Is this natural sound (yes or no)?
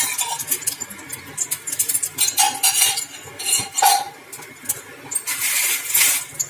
yes